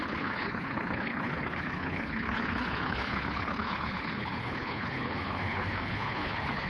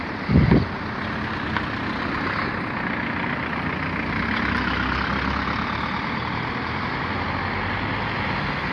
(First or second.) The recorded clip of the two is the second